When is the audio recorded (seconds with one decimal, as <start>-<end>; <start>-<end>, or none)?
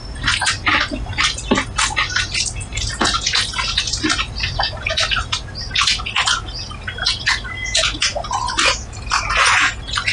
0.0-10.1